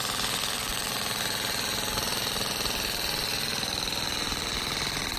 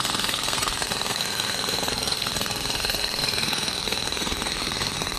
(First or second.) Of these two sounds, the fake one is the second